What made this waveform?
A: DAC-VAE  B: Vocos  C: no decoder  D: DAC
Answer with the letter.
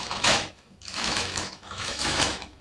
A